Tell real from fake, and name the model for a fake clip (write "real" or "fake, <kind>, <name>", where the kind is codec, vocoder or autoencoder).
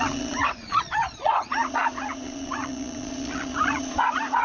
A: fake, vocoder, Vocos